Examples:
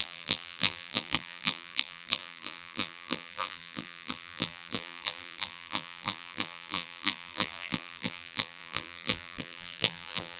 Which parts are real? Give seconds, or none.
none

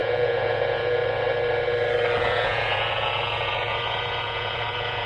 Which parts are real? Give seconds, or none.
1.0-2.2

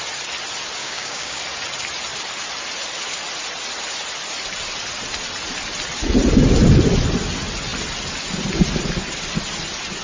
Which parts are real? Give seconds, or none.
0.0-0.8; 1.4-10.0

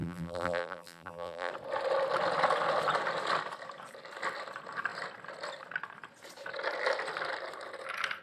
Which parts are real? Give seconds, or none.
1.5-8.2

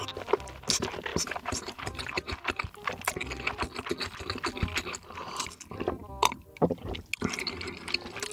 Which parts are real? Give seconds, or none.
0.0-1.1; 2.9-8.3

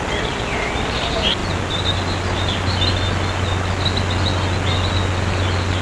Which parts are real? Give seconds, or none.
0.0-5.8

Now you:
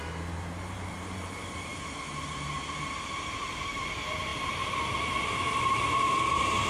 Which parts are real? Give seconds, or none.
none